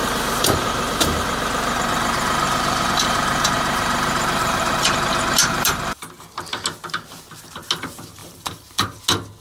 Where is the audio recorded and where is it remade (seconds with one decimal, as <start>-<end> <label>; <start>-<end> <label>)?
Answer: 0.0-4.8 remade; 4.8-5.4 recorded; 5.4-6.0 remade; 6.0-8.2 recorded; 8.2-9.0 remade; 9.0-9.4 recorded